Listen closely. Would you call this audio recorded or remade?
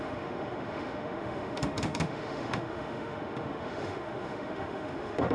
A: remade